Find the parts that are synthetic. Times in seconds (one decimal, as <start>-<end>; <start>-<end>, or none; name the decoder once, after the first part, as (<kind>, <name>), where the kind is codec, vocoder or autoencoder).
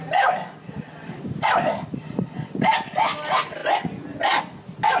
none